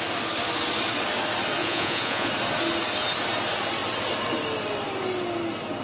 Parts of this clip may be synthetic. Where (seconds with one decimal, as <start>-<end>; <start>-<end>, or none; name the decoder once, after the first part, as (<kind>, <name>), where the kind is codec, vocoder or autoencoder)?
1.6-2.3 (vocoder, Vocos)